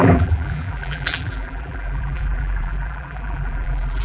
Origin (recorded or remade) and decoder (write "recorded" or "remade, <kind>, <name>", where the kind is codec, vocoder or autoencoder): remade, vocoder, BigVGAN v2